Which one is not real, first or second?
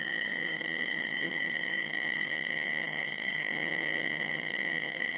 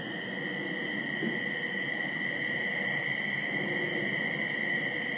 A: first